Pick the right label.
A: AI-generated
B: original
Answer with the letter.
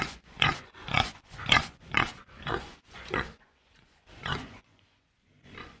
A